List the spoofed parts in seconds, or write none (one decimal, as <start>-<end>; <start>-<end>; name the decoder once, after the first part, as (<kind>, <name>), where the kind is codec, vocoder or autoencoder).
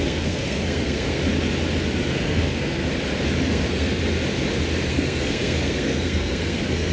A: 0.0-1.2 (codec, SNAC); 2.1-2.8; 3.4-4.0; 4.9-6.9